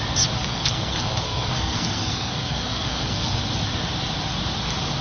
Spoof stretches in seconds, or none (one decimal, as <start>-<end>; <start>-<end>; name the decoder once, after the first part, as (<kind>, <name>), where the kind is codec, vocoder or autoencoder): 0.4-3.4 (codec, SNAC)